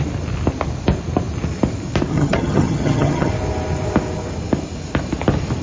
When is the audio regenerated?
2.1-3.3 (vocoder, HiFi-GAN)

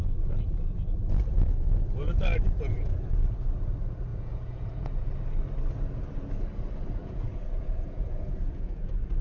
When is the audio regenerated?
4.1-5.1 (vocoder, Vocos); 7.0-9.2

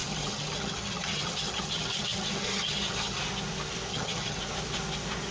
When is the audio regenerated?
0.0-3.2 (vocoder, HiFi-GAN); 3.9-4.4

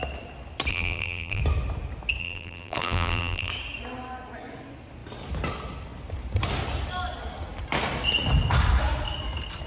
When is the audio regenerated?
0.7-1.4 (vocoder, BigVGAN v2); 2.2-3.5